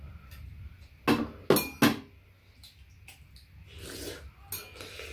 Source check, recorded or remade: recorded